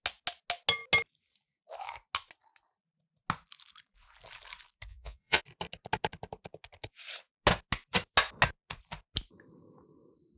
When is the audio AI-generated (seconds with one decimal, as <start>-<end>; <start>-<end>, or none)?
4.9-5.4